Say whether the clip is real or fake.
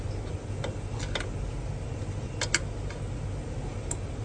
real